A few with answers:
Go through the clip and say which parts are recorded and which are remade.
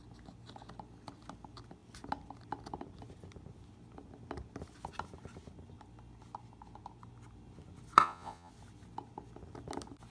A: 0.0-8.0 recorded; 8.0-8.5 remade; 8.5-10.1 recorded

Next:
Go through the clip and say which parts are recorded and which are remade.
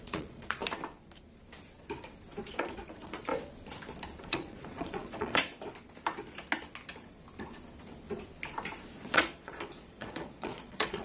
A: 0.0-0.6 remade; 0.6-2.6 recorded; 2.6-3.3 remade; 3.3-4.2 recorded; 4.2-5.4 remade; 5.4-9.0 recorded; 9.0-11.0 remade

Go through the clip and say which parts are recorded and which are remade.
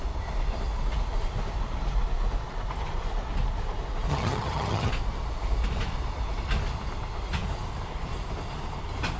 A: 0.0-4.1 recorded; 4.1-4.9 remade; 4.9-9.2 recorded